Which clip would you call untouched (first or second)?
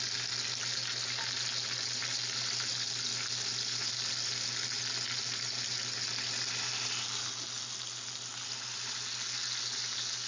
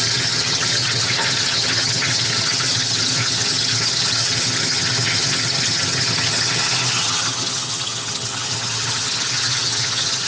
first